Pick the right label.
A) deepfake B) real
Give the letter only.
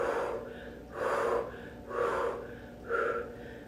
B